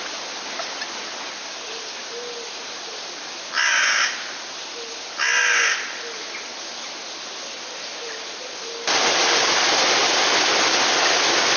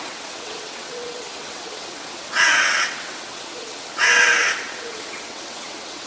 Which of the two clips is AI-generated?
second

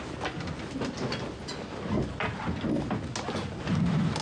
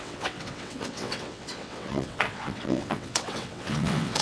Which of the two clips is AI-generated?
second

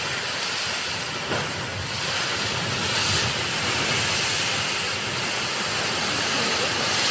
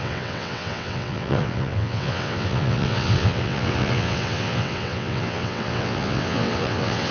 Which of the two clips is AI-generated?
second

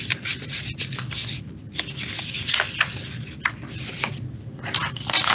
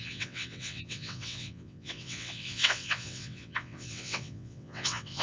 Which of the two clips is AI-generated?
second